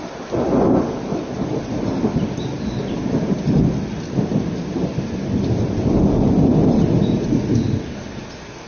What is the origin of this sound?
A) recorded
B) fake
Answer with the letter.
A